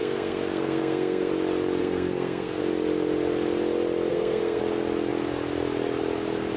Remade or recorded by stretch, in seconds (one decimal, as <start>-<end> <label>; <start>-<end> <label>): 0.0-1.3 remade; 1.3-1.8 recorded; 1.8-2.6 remade; 2.6-4.1 recorded; 4.1-4.6 remade; 4.6-6.6 recorded